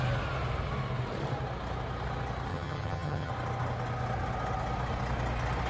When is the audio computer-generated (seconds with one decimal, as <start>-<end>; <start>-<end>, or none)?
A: 2.5-3.3